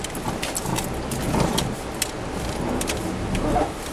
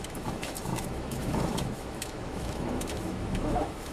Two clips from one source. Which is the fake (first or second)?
second